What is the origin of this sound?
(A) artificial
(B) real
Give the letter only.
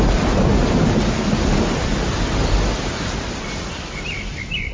B